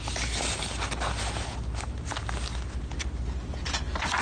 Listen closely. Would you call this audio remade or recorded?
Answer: recorded